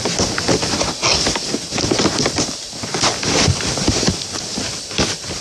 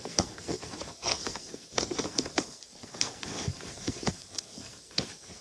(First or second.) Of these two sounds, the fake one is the second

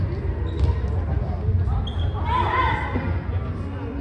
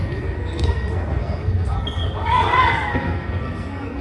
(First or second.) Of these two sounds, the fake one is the second